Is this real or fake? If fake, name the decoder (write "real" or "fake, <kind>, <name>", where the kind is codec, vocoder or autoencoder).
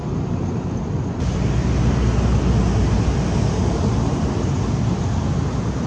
real